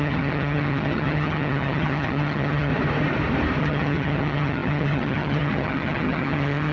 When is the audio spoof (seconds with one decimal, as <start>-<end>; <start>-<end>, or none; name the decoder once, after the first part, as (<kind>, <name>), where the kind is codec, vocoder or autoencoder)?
0.0-2.7 (vocoder, HiFi-GAN); 3.6-6.7